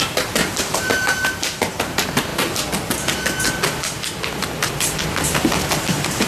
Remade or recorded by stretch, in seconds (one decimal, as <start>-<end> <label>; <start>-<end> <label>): 0.0-2.3 remade; 2.3-5.8 recorded; 5.8-6.3 remade